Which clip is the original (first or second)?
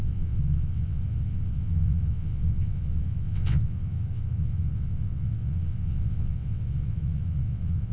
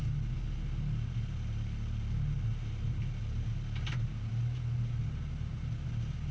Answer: second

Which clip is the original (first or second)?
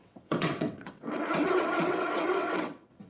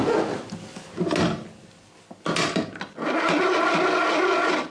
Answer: second